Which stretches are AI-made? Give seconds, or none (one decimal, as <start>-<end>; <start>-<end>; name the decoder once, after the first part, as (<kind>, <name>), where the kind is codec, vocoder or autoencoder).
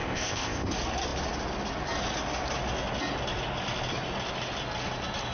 0.0-0.7 (codec, ZipCodec)